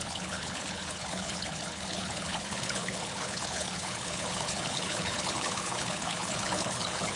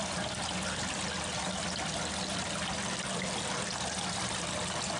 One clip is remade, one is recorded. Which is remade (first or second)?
first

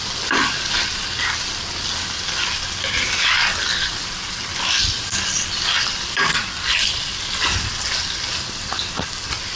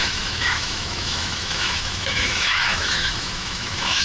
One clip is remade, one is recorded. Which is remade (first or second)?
second